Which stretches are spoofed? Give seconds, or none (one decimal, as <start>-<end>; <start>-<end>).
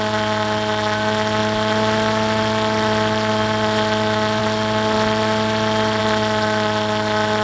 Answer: none